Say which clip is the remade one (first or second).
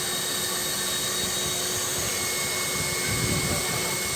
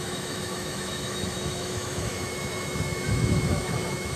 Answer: second